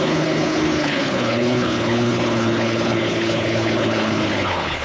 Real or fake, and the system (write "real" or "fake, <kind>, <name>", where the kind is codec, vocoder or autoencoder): fake, codec, HILCodec